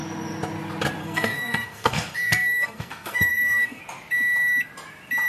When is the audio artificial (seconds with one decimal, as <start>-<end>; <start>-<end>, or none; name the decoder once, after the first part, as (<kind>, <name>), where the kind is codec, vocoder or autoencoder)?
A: 1.0-3.8 (codec, SNAC)